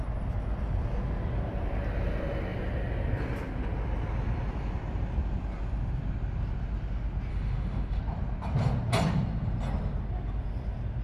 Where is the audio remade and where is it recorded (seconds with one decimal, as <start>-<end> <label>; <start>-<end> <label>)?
0.0-7.3 recorded; 7.3-8.0 remade; 8.0-11.0 recorded